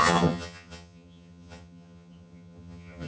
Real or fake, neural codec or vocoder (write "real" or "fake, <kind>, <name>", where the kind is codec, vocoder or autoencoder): fake, vocoder, HiFi-GAN